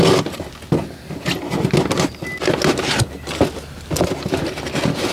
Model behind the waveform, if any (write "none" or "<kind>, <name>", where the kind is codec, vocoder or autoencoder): none